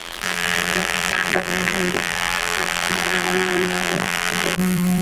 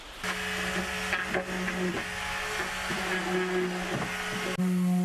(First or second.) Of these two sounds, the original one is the second